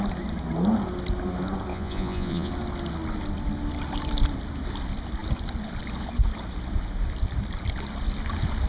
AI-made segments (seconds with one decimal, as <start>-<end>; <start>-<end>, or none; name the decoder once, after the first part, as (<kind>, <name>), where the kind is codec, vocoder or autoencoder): 1.7-2.5 (vocoder, Vocos)